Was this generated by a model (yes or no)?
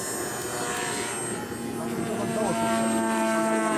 no